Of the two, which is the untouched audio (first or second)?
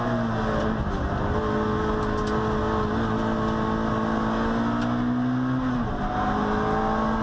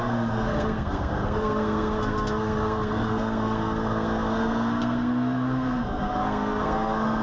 first